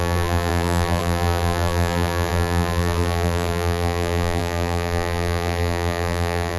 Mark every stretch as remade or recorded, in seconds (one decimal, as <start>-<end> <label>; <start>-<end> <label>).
0.0-6.6 remade